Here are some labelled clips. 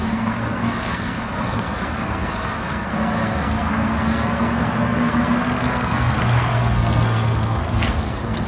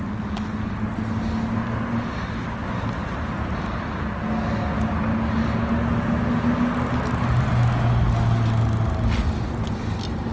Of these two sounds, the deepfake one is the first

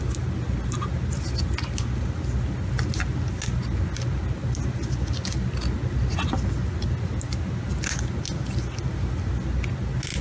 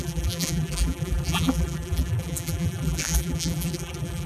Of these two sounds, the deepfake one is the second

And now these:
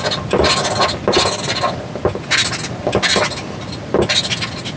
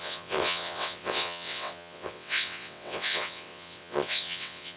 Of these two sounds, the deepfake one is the second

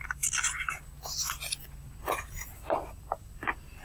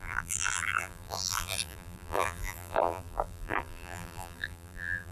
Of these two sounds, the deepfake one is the second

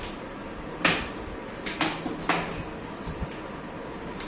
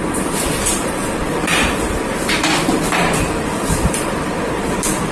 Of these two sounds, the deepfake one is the second